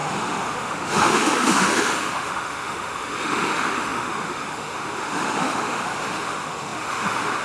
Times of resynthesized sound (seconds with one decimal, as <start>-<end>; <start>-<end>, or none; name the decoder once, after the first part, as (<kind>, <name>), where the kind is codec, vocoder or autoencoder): 0.0-7.4 (autoencoder, DAC-VAE)